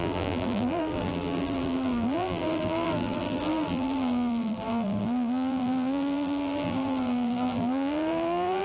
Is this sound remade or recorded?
remade